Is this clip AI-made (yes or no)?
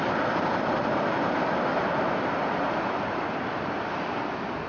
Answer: yes